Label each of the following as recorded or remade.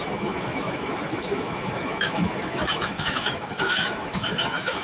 remade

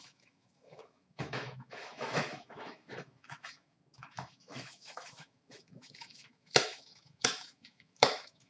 remade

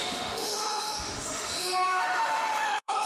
remade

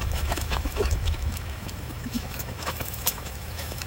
remade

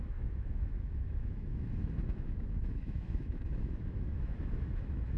remade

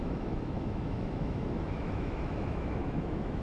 remade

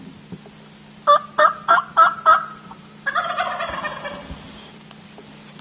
recorded